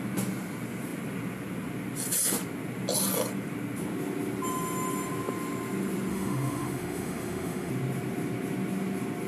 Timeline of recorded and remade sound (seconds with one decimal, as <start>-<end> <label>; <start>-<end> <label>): 0.0-6.1 recorded; 6.1-7.7 remade; 7.7-9.3 recorded